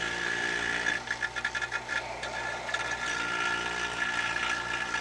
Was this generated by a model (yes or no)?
yes